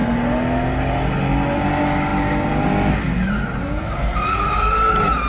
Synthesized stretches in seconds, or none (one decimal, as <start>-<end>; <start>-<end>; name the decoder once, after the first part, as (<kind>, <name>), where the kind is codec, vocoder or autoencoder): none